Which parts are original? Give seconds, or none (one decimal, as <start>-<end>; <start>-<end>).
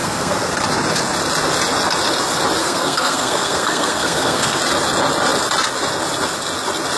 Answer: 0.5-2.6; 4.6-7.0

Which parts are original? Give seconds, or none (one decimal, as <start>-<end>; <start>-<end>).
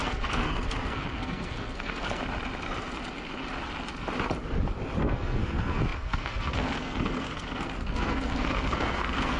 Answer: 2.2-5.0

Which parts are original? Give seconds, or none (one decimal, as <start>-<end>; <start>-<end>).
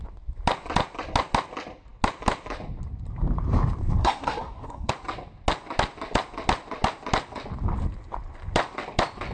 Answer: 0.0-4.0; 4.9-9.3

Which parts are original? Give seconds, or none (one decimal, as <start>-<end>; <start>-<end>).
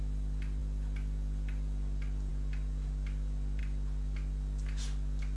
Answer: 0.0-5.4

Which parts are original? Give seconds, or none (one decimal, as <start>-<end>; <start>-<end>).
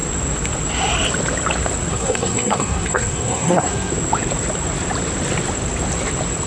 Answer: 0.0-1.9; 3.9-6.5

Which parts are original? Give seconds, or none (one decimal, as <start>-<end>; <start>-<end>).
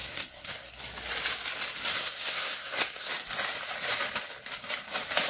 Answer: 0.8-1.9; 3.1-5.3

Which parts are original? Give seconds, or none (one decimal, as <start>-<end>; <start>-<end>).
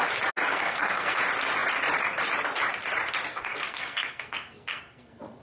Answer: 0.0-0.5; 1.2-3.3